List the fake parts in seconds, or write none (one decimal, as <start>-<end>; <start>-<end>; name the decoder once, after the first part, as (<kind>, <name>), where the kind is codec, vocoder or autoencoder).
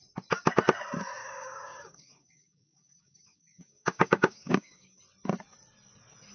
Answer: 1.2-5.0 (codec, DAC)